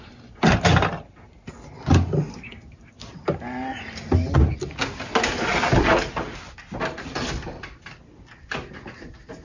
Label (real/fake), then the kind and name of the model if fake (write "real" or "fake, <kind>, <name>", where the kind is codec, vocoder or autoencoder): real